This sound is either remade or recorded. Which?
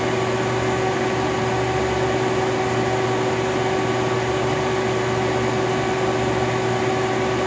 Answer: recorded